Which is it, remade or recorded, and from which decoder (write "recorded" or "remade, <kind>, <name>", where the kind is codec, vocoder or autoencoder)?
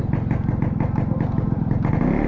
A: recorded